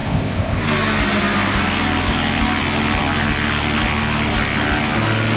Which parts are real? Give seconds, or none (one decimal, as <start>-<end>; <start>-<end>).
0.6-5.4